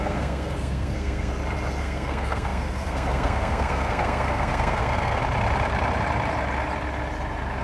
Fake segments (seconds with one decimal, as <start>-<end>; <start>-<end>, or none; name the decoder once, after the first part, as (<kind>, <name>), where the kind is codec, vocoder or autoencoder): 0.0-1.3 (codec, SNAC); 1.8-5.2